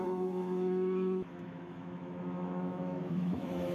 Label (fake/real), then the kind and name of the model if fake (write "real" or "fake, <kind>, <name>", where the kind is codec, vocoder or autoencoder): fake, autoencoder, DAC-VAE